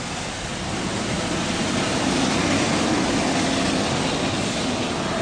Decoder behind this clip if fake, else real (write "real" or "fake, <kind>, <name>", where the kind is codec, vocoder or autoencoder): real